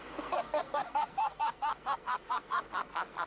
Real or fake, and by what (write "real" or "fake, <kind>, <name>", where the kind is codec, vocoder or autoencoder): fake, codec, SNAC